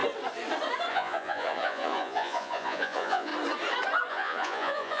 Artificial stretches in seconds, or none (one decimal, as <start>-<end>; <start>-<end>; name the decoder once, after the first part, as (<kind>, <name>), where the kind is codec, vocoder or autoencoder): 0.9-3.3 (vocoder, Vocos); 4.1-5.0

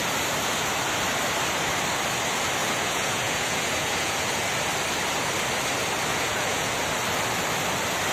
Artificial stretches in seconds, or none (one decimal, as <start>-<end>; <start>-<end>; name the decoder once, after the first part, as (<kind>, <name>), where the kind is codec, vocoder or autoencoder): 2.6-4.4 (vocoder, Vocos); 6.1-6.7

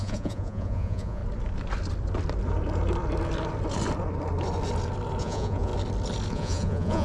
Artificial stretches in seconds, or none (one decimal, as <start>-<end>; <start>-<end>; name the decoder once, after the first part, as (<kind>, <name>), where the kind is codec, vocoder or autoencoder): 0.0-1.2 (vocoder, Vocos); 5.2-5.7; 6.3-7.0

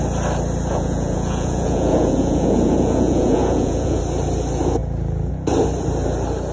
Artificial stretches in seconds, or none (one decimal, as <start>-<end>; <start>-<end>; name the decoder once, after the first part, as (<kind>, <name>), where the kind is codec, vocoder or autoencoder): 0.7-4.0 (vocoder, Vocos)

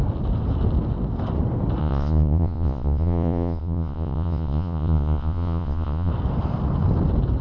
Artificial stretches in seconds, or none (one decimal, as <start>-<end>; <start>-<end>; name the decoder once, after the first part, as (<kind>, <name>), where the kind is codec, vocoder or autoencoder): 1.8-6.1 (vocoder, Vocos)

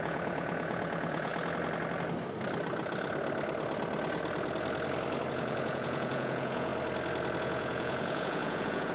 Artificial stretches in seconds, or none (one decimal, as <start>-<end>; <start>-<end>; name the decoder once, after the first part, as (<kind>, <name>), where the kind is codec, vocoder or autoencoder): 0.0-1.3 (vocoder, Vocos); 5.3-6.7; 7.4-8.9

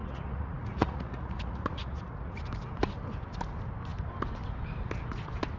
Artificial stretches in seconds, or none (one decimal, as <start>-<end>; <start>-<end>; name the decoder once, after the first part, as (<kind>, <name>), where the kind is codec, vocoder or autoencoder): 0.0-2.4 (vocoder, Vocos)

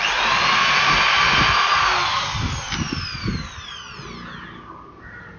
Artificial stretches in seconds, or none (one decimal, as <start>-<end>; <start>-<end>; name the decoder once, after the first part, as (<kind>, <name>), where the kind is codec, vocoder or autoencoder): none